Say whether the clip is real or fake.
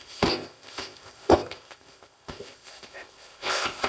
fake